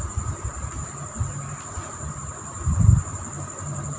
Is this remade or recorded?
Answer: remade